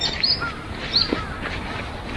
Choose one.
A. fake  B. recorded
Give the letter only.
B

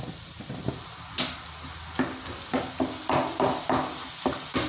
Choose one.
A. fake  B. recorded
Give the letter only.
B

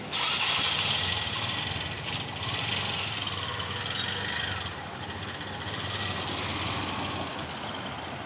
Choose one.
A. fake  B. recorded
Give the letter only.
B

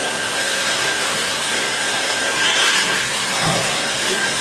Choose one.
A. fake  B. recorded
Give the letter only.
A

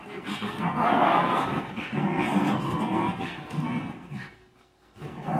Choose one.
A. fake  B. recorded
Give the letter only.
A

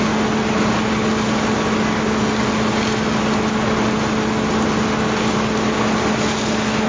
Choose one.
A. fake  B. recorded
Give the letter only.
B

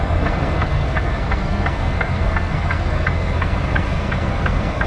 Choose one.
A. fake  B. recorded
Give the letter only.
A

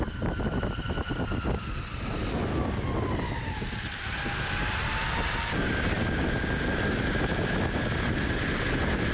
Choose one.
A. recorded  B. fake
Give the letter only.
A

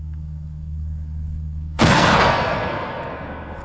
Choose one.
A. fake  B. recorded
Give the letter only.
A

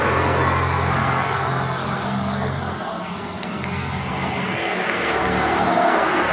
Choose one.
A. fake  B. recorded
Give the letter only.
A